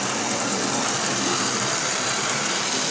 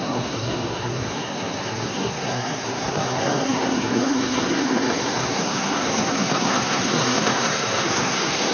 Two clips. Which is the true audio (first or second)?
first